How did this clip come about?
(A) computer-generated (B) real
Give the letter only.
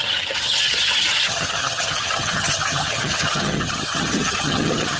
A